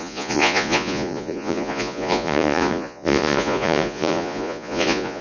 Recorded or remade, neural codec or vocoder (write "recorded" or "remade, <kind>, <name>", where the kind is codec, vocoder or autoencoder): remade, vocoder, Vocos